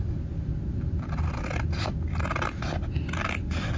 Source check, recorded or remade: recorded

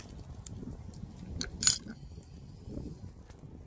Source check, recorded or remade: recorded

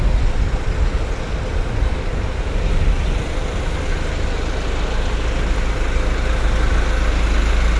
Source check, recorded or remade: recorded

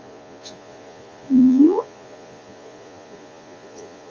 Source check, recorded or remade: remade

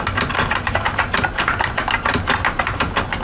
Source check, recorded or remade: recorded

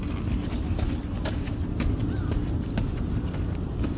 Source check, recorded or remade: recorded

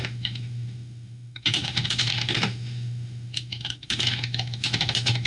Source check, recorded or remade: remade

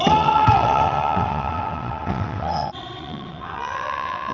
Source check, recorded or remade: remade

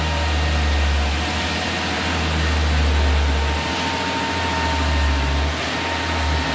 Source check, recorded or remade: recorded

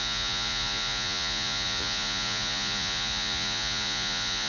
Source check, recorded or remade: remade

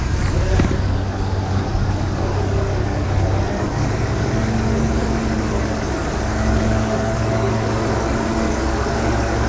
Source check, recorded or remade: remade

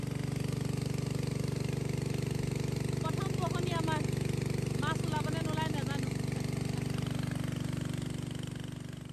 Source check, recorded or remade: recorded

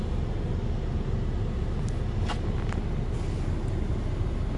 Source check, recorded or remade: recorded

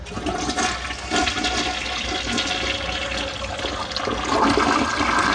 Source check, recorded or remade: recorded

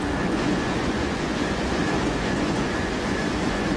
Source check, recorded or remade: remade